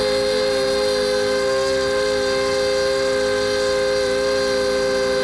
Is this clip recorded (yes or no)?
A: yes